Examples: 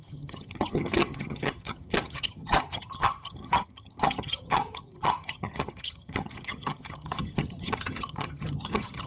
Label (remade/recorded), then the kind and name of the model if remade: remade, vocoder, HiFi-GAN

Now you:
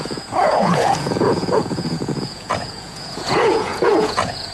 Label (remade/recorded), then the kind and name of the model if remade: remade, vocoder, Vocos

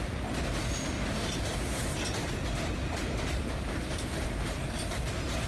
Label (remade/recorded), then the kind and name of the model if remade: recorded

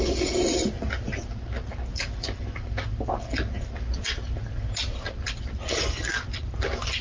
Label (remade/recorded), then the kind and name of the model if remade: recorded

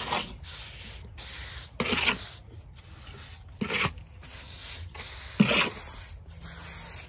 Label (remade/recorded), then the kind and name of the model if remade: recorded